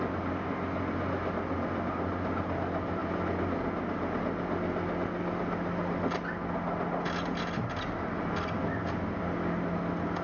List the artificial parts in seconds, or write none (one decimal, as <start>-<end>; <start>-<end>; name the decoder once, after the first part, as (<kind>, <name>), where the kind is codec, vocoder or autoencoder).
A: none